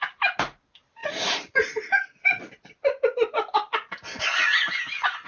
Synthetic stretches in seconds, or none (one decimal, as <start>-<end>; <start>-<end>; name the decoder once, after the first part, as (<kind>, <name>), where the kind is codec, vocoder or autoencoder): none